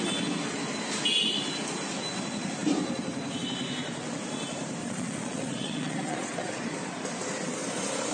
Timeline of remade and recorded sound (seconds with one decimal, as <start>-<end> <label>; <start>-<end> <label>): 0.0-4.8 recorded; 4.8-6.6 remade; 6.6-8.1 recorded